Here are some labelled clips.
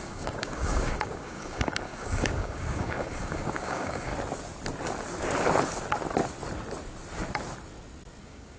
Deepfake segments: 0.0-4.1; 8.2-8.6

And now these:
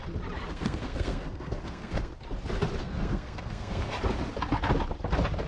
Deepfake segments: 0.5-2.1; 2.8-3.9

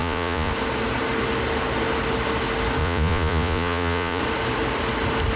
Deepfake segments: 0.0-0.5; 2.8-4.2

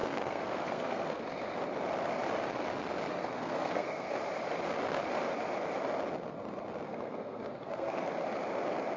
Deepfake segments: 0.0-1.2; 3.2-4.1; 6.9-8.1

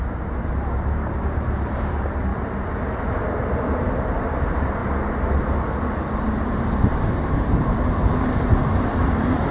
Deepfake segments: 0.0-2.3; 3.3-4.8; 6.2-9.5

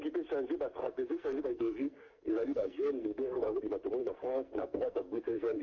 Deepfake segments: 0.8-3.6; 4.0-5.6